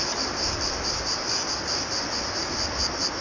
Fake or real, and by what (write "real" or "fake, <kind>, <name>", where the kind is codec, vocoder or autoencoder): real